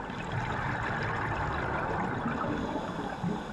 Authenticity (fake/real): real